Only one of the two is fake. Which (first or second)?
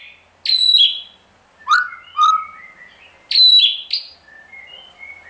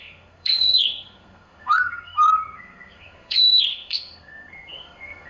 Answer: second